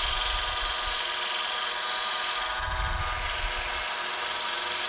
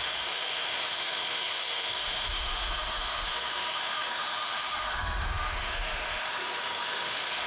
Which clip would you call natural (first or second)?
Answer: first